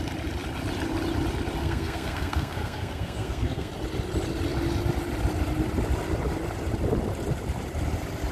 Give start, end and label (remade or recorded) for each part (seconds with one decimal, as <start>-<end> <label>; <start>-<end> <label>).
0.0-1.6 recorded; 1.6-3.7 remade; 3.7-8.3 recorded